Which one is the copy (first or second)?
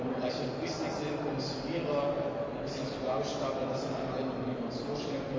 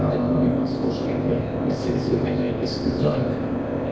second